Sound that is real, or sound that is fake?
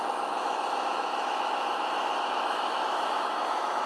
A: fake